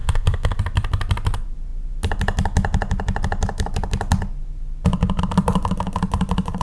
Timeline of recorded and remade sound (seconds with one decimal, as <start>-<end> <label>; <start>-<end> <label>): 0.0-0.6 remade; 0.6-6.6 recorded